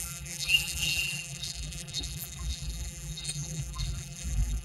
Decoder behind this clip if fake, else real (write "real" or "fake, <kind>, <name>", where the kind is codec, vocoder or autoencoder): fake, vocoder, BigVGAN v2